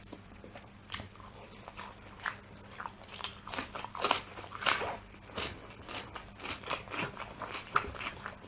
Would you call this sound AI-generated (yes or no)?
yes